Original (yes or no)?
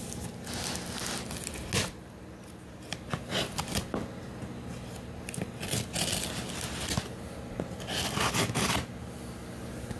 yes